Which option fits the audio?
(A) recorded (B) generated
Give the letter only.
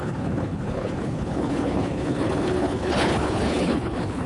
B